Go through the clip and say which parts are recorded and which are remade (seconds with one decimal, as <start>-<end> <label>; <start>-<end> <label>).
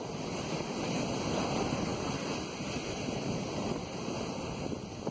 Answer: 0.0-5.1 recorded